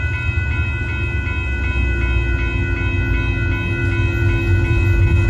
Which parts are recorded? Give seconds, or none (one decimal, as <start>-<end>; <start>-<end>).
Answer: 0.0-5.3